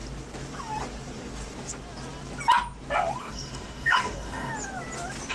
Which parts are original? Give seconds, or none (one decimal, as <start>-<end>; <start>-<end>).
0.0-3.2; 4.5-5.3